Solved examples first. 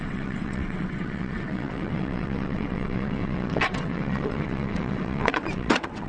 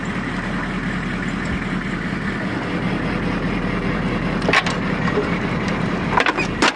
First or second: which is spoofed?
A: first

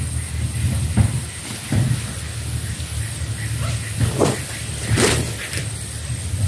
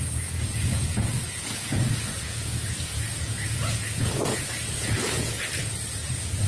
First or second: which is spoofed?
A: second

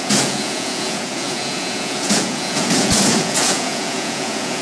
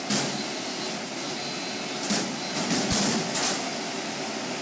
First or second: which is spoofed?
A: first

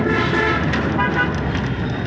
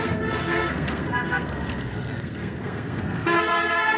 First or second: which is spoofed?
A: second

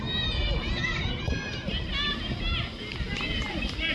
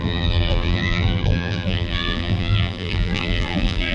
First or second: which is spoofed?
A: second